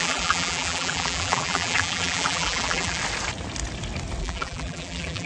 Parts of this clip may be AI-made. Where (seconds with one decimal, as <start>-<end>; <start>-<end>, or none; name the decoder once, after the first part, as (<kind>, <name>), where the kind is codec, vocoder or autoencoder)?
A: 0.0-3.0 (vocoder, BigVGAN v2); 4.2-5.3